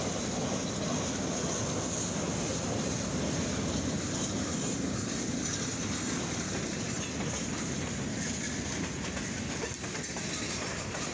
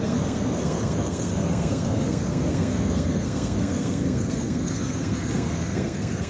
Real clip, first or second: first